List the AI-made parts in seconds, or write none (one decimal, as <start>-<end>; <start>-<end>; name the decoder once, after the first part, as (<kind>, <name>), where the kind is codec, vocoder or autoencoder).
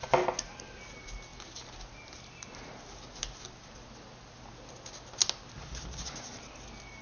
none